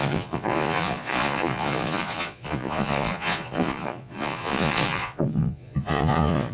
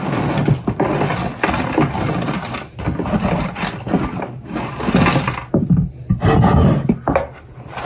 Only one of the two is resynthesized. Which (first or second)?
first